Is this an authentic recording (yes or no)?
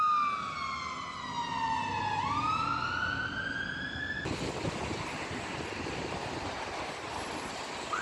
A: yes